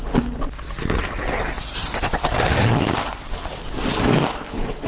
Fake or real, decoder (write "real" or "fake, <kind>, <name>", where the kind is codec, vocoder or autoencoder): real